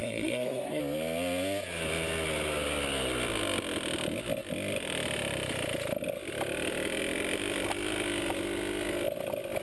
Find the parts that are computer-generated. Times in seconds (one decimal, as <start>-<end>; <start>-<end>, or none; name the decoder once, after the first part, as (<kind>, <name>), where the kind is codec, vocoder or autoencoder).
0.0-0.8 (codec, SNAC)